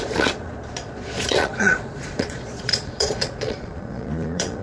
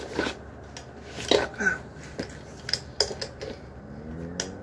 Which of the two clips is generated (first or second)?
first